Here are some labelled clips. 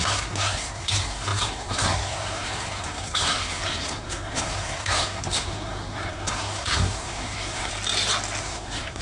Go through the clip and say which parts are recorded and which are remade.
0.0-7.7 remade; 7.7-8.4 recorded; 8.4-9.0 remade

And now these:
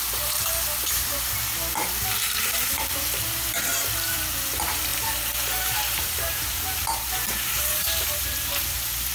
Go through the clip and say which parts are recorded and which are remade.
0.0-9.1 remade